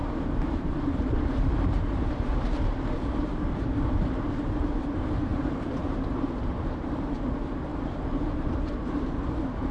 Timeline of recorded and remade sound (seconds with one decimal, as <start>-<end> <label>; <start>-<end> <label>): 0.0-9.7 remade